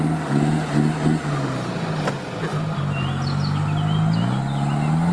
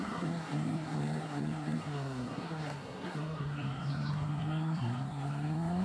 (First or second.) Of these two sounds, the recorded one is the first